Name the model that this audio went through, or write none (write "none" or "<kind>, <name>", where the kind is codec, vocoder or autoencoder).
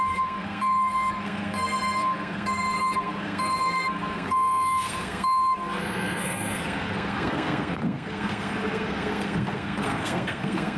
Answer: codec, SNAC